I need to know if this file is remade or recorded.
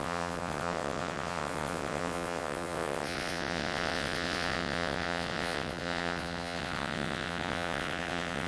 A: remade